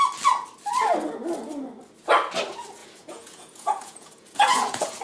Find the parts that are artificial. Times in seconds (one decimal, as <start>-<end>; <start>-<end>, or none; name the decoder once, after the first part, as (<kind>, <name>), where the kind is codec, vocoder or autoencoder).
2.8-5.0 (vocoder, Vocos)